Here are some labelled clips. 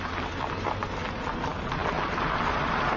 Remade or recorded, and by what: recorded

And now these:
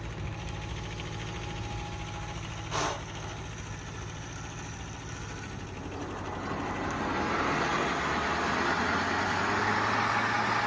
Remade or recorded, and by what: recorded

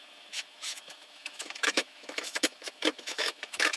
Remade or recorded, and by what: remade, autoencoder, DAC-VAE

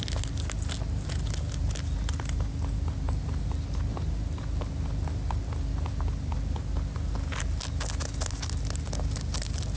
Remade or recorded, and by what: recorded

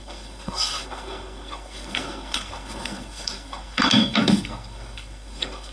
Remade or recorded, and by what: remade, codec, SNAC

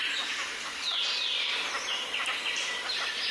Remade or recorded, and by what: recorded